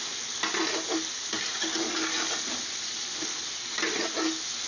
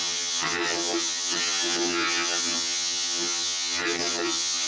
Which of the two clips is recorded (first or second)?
first